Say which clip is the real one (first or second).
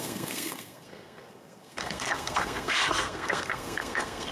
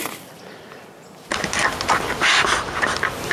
second